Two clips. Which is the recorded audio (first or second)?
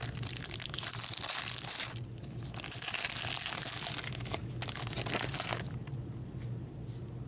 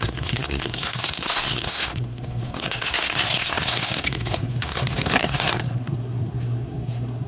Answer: first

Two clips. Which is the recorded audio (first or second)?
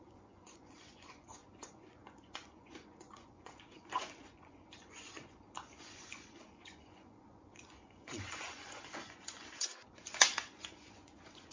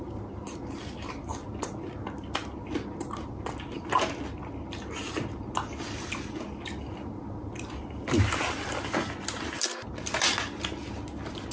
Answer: second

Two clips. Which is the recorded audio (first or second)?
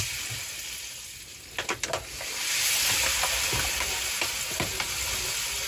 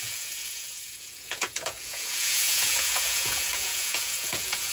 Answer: first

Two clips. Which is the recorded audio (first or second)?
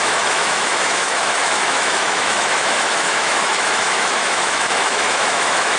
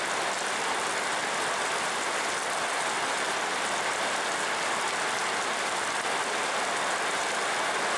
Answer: second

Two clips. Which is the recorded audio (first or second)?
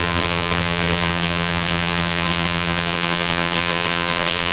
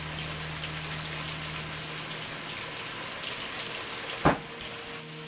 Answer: second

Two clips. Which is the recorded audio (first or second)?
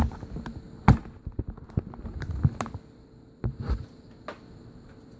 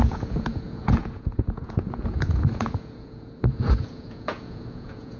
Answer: first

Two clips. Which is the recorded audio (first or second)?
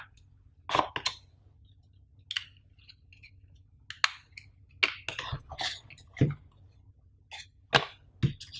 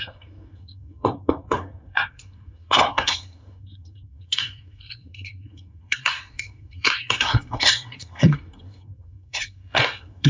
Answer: first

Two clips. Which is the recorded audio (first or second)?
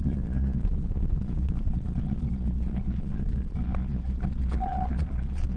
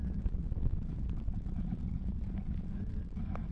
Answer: second